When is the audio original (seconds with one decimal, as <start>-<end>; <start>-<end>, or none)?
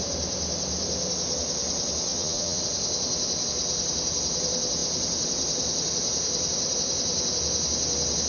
0.0-2.1; 2.6-8.3